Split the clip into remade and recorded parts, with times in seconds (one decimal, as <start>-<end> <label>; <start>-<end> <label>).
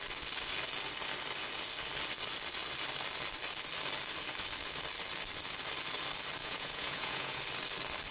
0.0-6.4 recorded; 6.4-7.4 remade; 7.4-8.1 recorded